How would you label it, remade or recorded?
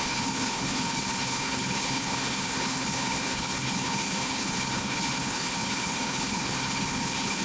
remade